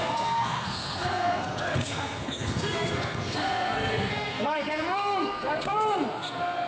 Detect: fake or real fake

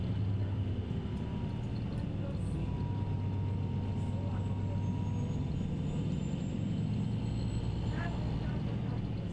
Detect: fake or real real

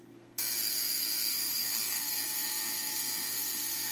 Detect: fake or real fake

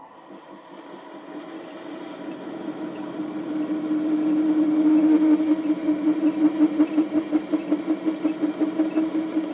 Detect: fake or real real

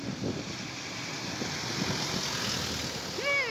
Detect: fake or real real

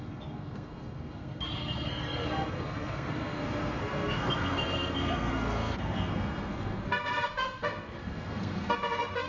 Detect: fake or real fake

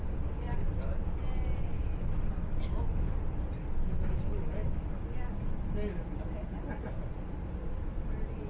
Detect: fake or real real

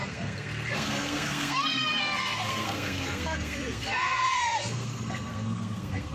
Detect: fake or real fake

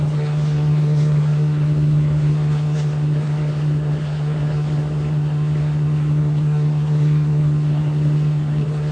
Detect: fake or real fake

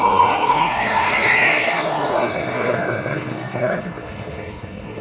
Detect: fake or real fake